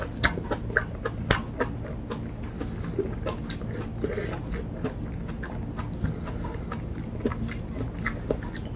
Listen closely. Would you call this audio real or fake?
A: real